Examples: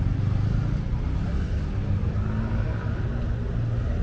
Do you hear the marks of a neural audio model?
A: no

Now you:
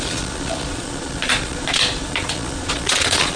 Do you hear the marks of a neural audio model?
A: yes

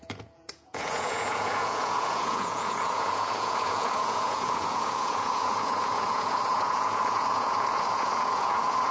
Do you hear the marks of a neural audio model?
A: yes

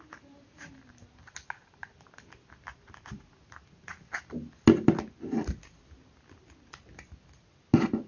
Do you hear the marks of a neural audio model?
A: no